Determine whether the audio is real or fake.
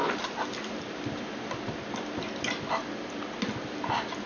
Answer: real